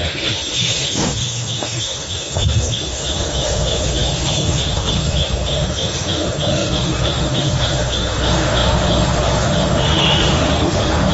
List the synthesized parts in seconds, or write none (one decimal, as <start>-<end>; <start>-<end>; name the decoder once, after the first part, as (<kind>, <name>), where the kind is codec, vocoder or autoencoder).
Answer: 0.0-11.1 (autoencoder, DAC-VAE)